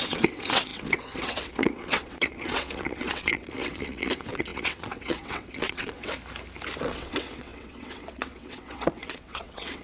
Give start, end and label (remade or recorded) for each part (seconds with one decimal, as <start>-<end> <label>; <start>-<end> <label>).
0.0-6.1 remade; 6.1-6.8 recorded; 6.8-9.8 remade